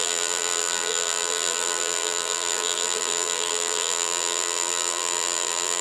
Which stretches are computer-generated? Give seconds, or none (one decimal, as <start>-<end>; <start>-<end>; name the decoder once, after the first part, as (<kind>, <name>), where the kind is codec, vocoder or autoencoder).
0.0-5.8 (vocoder, BigVGAN v2)